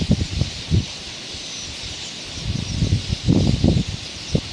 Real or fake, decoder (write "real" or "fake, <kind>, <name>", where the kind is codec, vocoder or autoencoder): real